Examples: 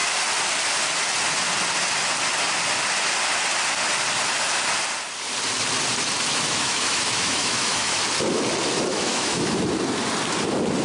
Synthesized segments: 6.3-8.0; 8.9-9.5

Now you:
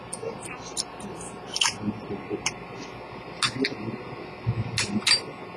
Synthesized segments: none

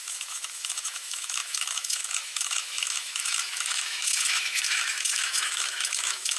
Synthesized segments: 0.0-6.4

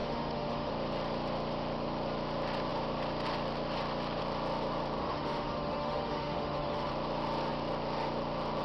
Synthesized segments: 0.0-0.7; 5.0-6.9

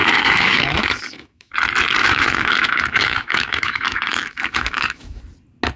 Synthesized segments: 0.0-1.5; 2.0-5.2